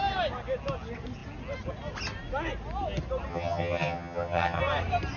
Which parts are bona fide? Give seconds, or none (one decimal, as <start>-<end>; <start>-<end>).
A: 0.0-3.3; 4.6-5.2